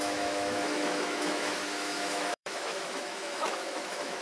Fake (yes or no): yes